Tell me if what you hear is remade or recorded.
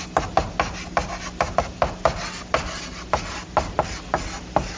recorded